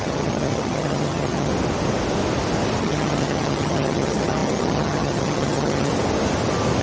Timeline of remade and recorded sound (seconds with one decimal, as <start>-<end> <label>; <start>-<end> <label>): 0.0-1.5 remade; 1.5-2.8 recorded; 2.8-5.9 remade; 5.9-6.8 recorded